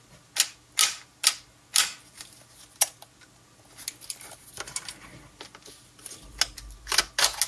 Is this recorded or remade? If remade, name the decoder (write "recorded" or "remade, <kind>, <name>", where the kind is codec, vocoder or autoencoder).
recorded